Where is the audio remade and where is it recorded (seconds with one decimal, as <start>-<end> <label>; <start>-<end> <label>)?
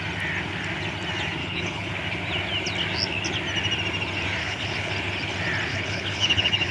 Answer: 0.0-1.4 recorded; 1.4-1.9 remade; 1.9-4.4 recorded; 4.4-4.9 remade; 4.9-5.7 recorded; 5.7-6.7 remade